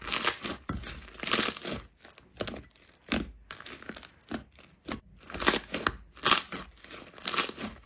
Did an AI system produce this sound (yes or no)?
no